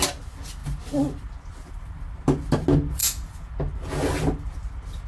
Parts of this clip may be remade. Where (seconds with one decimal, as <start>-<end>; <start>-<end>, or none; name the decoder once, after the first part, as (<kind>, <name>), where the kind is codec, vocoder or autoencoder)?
3.0-3.5 (vocoder, Vocos)